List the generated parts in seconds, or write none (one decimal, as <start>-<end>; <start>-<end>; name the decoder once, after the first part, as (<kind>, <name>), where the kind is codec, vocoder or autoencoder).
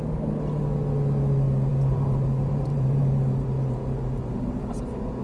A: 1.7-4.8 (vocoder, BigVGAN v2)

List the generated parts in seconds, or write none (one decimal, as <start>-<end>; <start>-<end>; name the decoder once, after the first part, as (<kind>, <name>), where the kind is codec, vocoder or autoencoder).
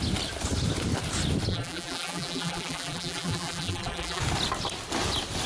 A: 1.5-4.2 (vocoder, BigVGAN v2)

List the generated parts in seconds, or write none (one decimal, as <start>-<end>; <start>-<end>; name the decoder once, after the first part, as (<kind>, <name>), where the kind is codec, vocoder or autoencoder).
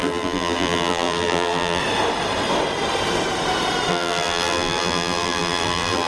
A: 0.0-1.8 (vocoder, BigVGAN v2); 3.9-6.1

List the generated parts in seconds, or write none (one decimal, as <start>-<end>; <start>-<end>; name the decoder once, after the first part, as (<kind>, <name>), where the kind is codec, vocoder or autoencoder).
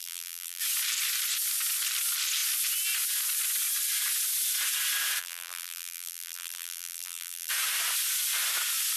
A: 0.0-0.6 (vocoder, BigVGAN v2); 5.2-7.5